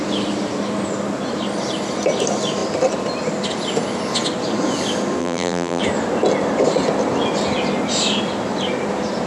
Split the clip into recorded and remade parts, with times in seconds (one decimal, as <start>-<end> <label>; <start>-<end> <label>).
0.0-5.2 recorded; 5.2-5.8 remade; 5.8-9.3 recorded